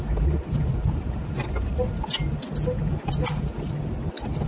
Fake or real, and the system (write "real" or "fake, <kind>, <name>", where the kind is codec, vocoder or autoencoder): real